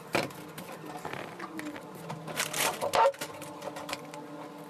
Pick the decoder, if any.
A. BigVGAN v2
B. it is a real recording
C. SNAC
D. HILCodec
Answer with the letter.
B